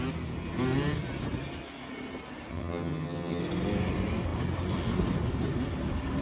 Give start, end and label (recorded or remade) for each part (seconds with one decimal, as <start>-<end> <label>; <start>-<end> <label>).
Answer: 0.0-2.5 recorded; 2.5-3.4 remade; 3.4-6.2 recorded